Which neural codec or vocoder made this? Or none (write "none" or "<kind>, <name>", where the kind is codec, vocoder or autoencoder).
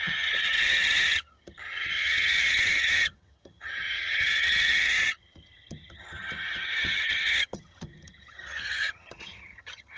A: vocoder, HiFi-GAN